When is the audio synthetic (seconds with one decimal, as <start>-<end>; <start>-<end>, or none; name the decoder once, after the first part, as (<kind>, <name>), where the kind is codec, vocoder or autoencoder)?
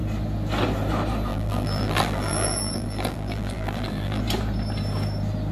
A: 1.3-4.2 (vocoder, BigVGAN v2)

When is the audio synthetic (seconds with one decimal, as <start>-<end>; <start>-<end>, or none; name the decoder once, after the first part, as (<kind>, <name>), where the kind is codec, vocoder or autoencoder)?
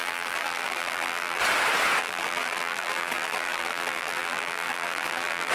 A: 0.0-1.4 (vocoder, BigVGAN v2); 2.0-5.5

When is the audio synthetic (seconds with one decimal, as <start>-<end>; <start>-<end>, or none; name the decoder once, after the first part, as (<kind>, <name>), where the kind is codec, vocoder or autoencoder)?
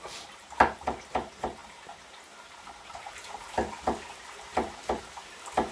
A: 0.0-5.7 (vocoder, BigVGAN v2)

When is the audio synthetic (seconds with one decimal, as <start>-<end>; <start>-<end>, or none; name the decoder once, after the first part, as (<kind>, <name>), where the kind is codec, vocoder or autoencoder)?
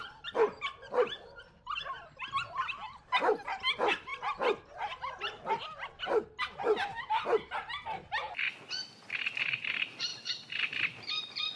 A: 0.0-4.1 (vocoder, BigVGAN v2); 6.6-11.6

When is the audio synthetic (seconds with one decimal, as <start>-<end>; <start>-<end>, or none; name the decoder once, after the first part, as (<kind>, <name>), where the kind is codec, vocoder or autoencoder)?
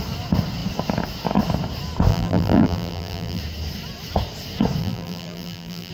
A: 2.1-3.4 (vocoder, BigVGAN v2); 4.8-5.9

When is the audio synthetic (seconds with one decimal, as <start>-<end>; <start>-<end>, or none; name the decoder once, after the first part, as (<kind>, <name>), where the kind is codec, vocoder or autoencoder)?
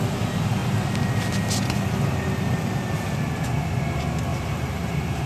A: 4.3-5.3 (vocoder, BigVGAN v2)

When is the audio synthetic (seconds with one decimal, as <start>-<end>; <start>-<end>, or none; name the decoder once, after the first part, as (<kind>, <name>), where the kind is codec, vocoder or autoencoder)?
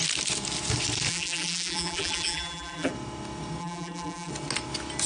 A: 1.1-2.9 (vocoder, BigVGAN v2); 3.6-4.3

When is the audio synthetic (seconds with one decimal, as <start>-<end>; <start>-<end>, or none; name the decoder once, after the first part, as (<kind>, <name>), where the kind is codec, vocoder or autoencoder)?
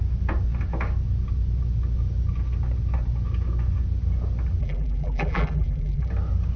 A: 4.6-6.1 (vocoder, BigVGAN v2)